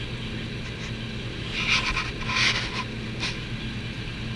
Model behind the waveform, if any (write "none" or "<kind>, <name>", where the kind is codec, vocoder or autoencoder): none